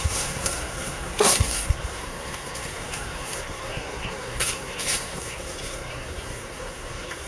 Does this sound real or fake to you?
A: fake